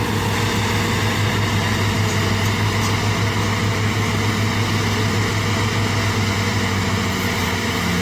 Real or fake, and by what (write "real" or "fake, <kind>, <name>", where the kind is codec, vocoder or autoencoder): real